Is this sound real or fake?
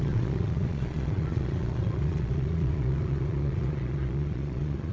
fake